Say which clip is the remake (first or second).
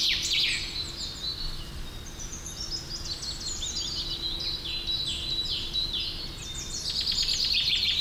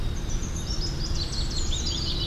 second